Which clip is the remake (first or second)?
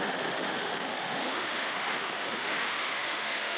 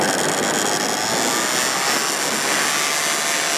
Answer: first